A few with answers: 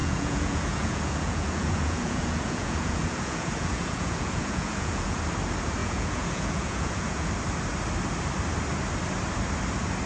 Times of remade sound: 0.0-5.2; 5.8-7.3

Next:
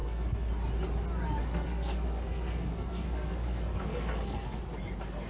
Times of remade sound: 0.0-0.5; 1.4-4.6